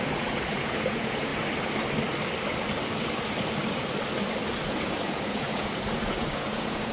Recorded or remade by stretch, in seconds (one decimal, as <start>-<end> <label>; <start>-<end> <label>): 0.0-1.3 remade; 1.3-4.7 recorded; 4.7-6.9 remade